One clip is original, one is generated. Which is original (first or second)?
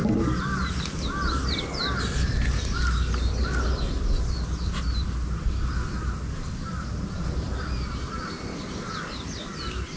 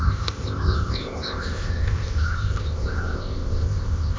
first